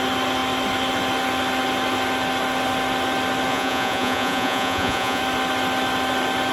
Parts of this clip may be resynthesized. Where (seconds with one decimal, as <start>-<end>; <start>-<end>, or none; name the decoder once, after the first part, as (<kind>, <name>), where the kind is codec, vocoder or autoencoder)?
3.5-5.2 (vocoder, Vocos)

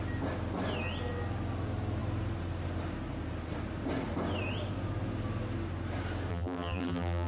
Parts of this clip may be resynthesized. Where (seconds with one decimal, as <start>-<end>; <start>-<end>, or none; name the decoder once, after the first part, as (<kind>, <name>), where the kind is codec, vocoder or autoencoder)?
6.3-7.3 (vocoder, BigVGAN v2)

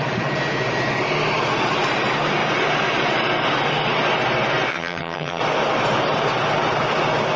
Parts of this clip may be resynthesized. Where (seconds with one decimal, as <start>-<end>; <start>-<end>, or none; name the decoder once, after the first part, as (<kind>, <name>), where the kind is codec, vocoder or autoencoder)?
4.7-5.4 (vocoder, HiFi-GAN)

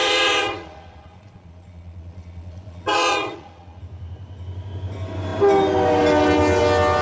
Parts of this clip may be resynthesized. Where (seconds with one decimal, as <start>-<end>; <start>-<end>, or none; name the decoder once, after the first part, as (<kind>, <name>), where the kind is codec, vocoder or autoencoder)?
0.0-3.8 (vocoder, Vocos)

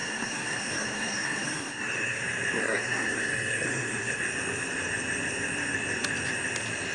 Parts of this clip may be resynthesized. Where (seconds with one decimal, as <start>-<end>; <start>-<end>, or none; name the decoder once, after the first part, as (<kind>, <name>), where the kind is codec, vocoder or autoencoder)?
0.0-2.2 (codec, SNAC); 2.6-4.2